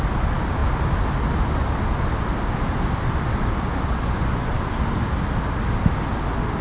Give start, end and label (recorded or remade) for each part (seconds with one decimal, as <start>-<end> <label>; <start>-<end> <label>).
0.0-3.9 recorded; 3.9-4.5 remade; 4.5-6.6 recorded